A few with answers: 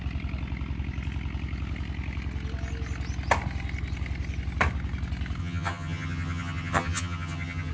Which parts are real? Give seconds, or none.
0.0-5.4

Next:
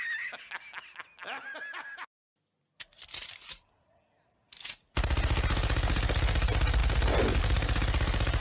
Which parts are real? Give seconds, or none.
0.0-8.4

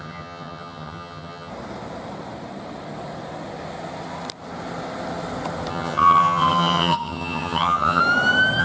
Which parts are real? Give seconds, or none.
1.5-5.7; 8.0-8.6

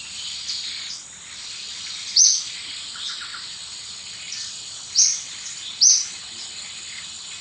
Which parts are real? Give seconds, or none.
0.0-7.4

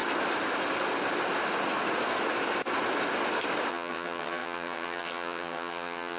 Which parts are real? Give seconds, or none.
0.0-3.7

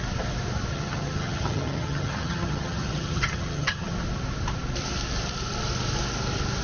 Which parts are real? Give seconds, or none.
0.0-0.7; 3.9-6.6

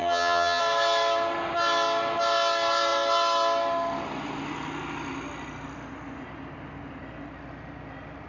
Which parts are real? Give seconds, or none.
0.6-8.3

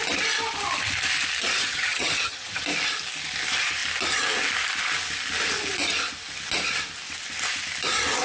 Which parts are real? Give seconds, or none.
0.0-1.6; 2.6-8.2